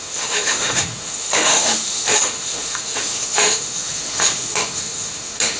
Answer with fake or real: fake